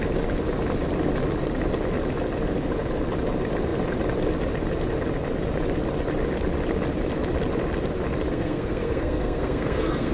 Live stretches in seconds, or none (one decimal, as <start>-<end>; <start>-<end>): 0.0-8.3